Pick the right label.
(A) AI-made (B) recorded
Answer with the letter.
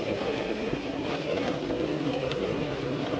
A